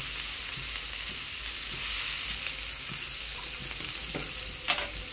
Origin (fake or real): real